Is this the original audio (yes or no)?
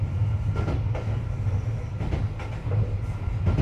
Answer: yes